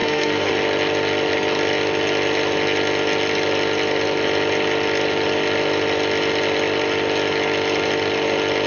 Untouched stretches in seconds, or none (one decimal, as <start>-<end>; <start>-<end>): 0.5-8.7